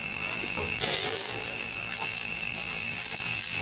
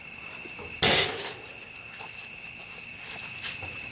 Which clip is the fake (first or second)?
first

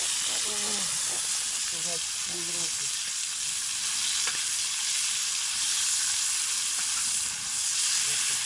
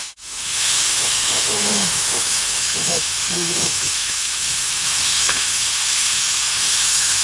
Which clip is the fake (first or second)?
second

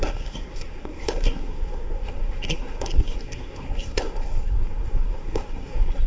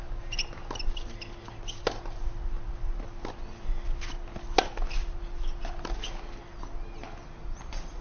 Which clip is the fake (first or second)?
first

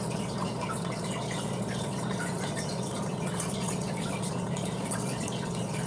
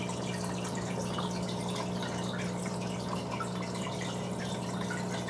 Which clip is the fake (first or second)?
first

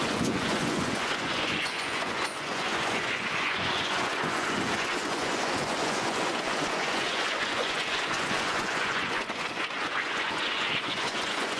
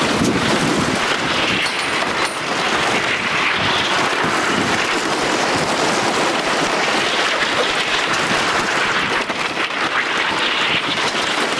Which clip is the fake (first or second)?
first